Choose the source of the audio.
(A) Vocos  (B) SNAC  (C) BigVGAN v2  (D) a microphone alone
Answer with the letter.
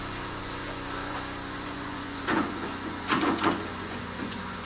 A